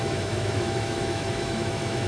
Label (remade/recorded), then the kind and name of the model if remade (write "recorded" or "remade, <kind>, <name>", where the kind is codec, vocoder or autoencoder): remade, autoencoder, DAC-VAE